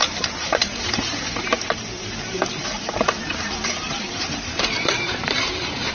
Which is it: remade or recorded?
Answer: remade